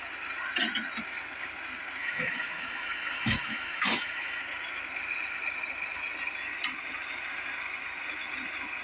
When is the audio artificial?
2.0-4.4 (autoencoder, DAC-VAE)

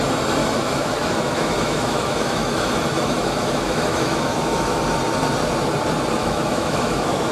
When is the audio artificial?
0.4-4.8 (autoencoder, DAC-VAE); 6.2-7.3

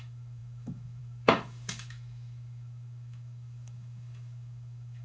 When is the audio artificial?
0.0-5.0 (autoencoder, DAC-VAE)

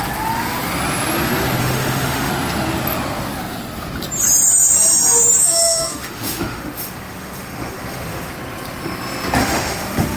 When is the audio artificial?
1.6-2.3 (autoencoder, DAC-VAE); 5.4-8.3; 9.4-10.2